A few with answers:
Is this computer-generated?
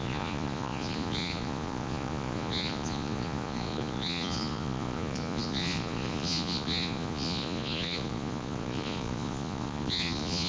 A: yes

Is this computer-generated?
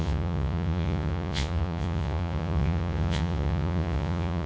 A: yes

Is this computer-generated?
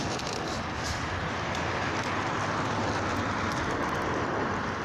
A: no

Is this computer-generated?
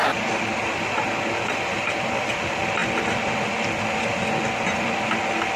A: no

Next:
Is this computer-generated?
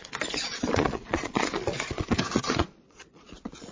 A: yes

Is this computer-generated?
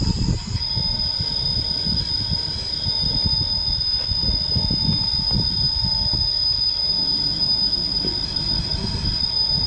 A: no